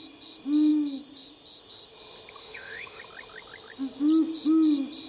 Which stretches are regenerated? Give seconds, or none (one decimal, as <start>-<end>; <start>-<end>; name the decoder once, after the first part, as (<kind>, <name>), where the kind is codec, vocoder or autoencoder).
2.4-3.0 (autoencoder, DAC-VAE)